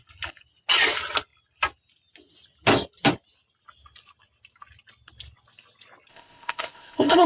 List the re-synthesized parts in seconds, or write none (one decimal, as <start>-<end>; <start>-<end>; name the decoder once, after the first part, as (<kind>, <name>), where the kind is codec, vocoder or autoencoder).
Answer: 6.1-7.3 (codec, ZipCodec)